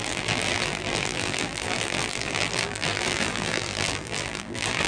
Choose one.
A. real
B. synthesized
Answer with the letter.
B